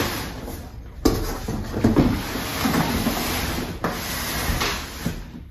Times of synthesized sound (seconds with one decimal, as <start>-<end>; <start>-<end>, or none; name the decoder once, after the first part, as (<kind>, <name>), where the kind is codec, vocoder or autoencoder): none